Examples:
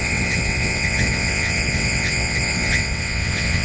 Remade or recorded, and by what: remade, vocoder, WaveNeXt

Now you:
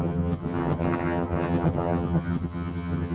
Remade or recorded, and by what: remade, vocoder, HiFi-GAN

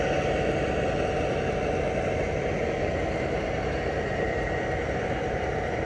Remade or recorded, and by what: recorded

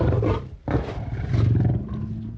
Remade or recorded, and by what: recorded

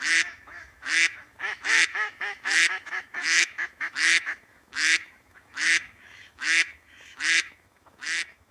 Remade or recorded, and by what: remade, autoencoder, DAC-VAE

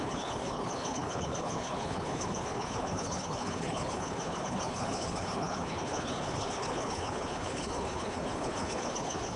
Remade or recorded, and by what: remade, codec, HILCodec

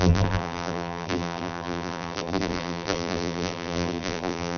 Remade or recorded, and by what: remade, vocoder, BigVGAN v2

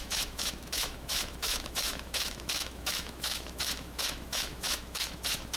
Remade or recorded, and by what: remade, autoencoder, DAC-VAE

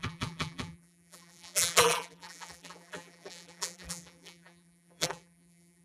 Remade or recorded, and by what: remade, vocoder, BigVGAN v2